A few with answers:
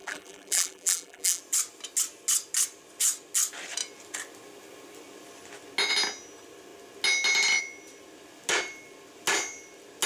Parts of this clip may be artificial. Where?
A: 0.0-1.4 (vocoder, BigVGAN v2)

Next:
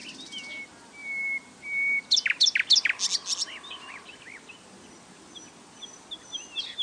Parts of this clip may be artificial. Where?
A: none

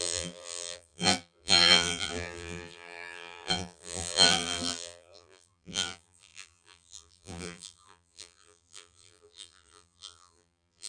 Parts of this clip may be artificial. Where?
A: 0.0-10.9 (vocoder, BigVGAN v2)